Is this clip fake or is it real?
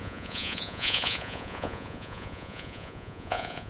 fake